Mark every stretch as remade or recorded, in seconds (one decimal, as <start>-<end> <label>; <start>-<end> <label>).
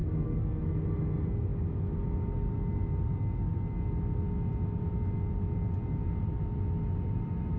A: 0.0-0.6 remade; 0.6-7.6 recorded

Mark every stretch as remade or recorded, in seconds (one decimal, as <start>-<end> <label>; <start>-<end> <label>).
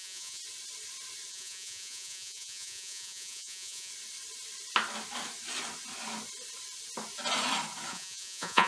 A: 0.0-0.4 remade; 0.4-1.3 recorded; 1.3-3.9 remade; 3.9-7.9 recorded; 7.9-8.7 remade